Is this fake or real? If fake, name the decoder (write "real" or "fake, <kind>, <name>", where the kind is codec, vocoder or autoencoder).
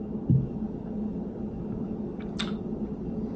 real